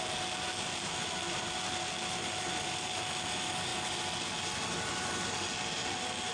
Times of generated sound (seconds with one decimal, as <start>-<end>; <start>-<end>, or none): none